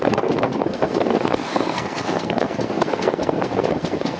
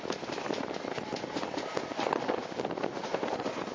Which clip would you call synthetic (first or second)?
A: first